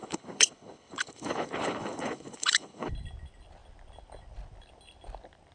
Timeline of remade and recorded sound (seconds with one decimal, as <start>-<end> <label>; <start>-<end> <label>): 0.0-2.9 remade; 2.9-5.5 recorded